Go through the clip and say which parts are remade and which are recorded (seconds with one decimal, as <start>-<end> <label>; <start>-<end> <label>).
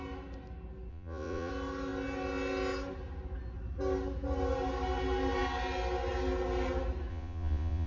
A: 0.0-0.9 recorded; 0.9-1.5 remade; 1.5-7.1 recorded; 7.1-7.9 remade